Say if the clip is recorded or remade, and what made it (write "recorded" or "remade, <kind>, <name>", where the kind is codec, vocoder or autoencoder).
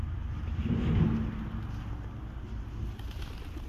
recorded